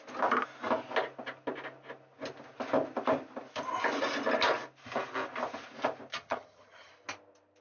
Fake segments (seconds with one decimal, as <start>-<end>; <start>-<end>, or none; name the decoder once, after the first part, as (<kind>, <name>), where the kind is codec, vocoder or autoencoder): 6.1-6.9 (vocoder, HiFi-GAN)